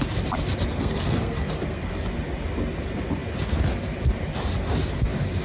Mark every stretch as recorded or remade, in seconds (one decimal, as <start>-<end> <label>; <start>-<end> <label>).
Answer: 0.0-0.7 recorded; 0.7-1.9 remade; 1.9-5.4 recorded